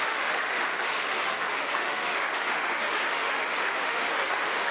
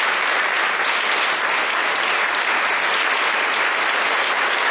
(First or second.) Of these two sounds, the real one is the second